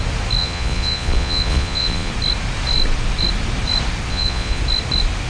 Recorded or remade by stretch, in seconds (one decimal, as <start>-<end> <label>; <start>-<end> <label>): 0.0-0.4 recorded; 0.4-2.1 remade; 2.1-4.1 recorded; 4.1-4.6 remade; 4.6-5.3 recorded